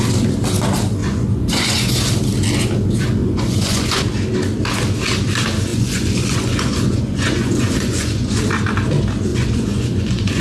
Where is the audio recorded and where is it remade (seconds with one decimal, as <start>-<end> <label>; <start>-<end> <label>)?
0.0-1.0 recorded; 1.0-2.0 remade; 2.0-3.2 recorded; 3.2-4.0 remade; 4.0-5.7 recorded; 5.7-8.4 remade; 8.4-9.3 recorded; 9.3-10.4 remade